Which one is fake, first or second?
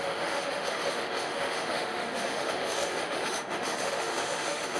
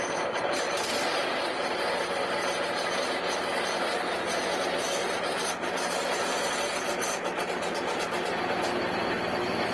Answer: first